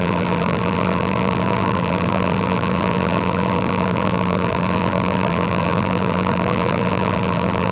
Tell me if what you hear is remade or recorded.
remade